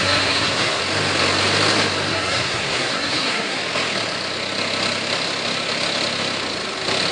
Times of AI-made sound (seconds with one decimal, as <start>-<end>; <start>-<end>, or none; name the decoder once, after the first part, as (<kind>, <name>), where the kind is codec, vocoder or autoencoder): 0.0-0.8 (codec, SNAC); 2.1-3.6